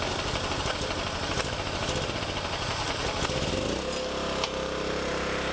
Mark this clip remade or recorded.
recorded